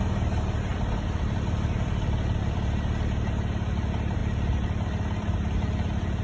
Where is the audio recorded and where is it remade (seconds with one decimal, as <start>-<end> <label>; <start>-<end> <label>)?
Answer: 0.0-0.7 recorded; 0.7-3.2 remade; 3.2-4.2 recorded; 4.2-4.9 remade; 4.9-6.2 recorded